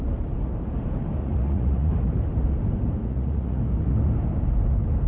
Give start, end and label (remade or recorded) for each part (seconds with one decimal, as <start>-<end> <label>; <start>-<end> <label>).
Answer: 0.0-1.2 recorded; 1.2-1.9 remade; 1.9-3.0 recorded; 3.0-3.6 remade; 3.6-5.1 recorded